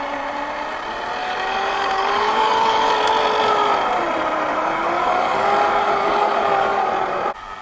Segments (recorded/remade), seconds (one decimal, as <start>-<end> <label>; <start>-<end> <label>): 0.0-1.2 recorded; 1.2-2.9 remade; 2.9-4.5 recorded; 4.5-6.9 remade; 6.9-7.6 recorded